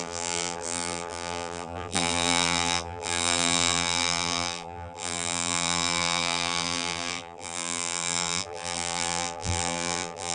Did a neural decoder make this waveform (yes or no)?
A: yes